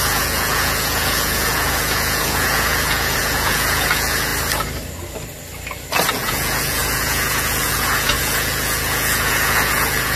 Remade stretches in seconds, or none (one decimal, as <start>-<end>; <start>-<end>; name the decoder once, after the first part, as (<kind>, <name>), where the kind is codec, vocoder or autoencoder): 0.0-4.3 (vocoder, Vocos); 6.1-10.2